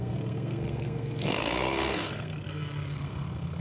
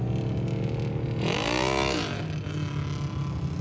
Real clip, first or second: second